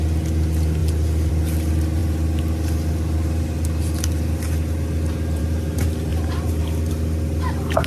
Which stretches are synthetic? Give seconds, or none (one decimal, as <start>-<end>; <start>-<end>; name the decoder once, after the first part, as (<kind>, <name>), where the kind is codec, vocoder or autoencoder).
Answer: none